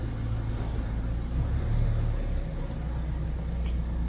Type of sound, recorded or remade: recorded